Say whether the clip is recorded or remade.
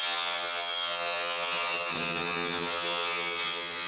remade